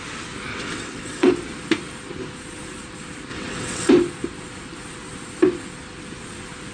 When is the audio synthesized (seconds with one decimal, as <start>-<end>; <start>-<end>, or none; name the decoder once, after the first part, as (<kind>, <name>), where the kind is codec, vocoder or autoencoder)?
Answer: 0.5-1.3 (vocoder, WaveNeXt); 3.3-3.9